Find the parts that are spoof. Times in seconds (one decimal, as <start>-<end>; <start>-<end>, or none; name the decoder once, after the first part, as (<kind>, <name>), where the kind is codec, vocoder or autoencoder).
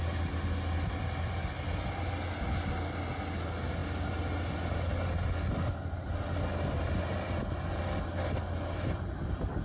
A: none